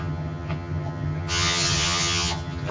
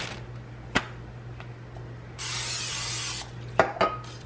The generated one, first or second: first